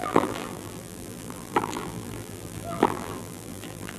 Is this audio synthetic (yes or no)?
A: yes